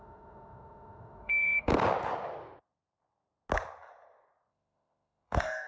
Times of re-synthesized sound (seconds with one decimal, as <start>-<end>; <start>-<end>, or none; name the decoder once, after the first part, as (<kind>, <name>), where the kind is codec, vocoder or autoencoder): 0.0-1.7 (autoencoder, DAC-VAE); 4.5-5.7